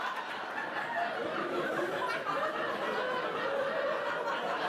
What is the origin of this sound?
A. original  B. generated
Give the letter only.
A